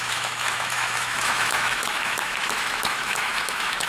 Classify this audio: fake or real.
fake